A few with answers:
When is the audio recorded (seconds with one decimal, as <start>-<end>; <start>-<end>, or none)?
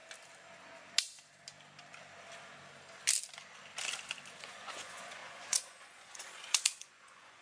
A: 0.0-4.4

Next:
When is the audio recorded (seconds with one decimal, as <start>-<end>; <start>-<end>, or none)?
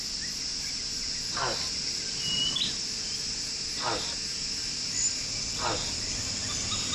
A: 0.0-6.9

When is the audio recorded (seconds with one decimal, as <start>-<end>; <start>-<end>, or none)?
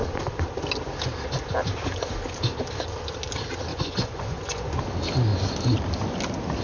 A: 0.0-3.7; 4.8-6.6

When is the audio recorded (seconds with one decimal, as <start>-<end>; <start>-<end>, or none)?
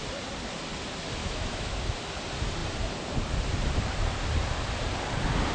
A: 0.0-1.2; 1.7-5.5